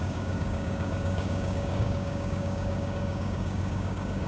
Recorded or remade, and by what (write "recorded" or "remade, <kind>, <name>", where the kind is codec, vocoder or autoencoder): remade, codec, DAC